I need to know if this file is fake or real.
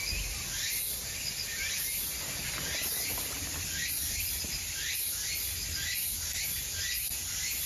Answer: real